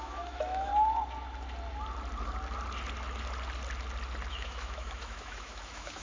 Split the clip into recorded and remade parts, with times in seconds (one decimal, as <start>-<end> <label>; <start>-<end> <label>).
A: 0.0-0.7 remade; 0.7-4.3 recorded; 4.3-6.0 remade